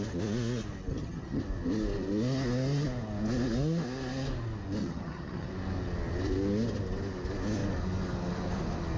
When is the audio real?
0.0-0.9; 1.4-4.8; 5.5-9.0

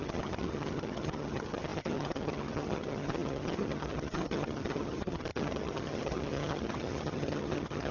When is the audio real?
none

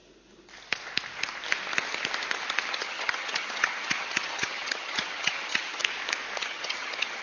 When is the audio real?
0.0-2.7; 5.8-6.4